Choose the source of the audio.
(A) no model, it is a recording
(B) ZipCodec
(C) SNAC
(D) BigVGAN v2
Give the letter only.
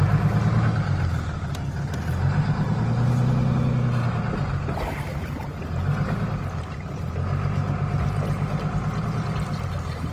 A